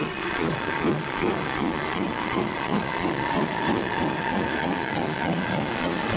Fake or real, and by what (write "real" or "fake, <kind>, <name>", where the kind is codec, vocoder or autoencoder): fake, vocoder, Vocos